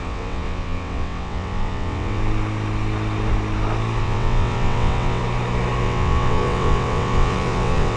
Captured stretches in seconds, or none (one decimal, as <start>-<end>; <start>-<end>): 2.2-4.0; 5.2-5.8